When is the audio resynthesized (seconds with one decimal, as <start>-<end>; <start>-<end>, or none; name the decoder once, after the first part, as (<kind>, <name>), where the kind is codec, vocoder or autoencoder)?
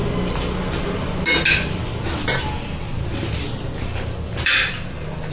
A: none